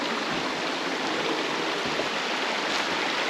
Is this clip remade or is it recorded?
recorded